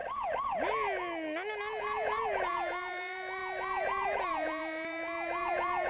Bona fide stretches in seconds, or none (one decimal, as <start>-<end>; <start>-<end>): 0.0-1.8